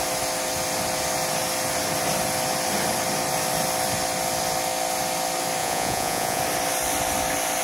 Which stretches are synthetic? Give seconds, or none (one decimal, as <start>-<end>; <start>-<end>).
5.6-6.4